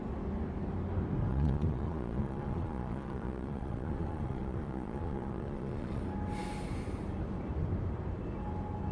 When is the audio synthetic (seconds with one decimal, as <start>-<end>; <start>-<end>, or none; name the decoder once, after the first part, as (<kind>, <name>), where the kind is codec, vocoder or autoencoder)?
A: 1.3-6.0 (vocoder, Vocos)